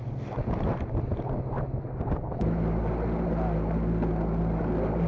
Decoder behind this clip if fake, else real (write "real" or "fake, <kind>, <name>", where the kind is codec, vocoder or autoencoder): real